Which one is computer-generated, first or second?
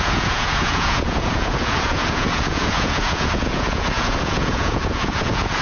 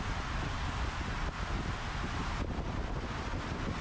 first